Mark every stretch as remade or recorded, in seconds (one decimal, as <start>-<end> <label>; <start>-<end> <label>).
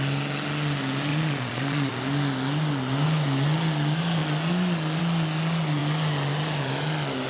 0.0-1.1 recorded; 1.1-1.9 remade; 1.9-7.3 recorded